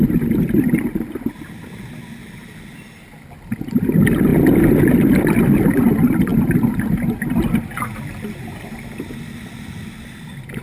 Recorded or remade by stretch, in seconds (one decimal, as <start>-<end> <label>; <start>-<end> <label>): 0.0-10.6 recorded